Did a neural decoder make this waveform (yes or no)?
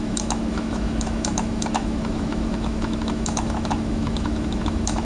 yes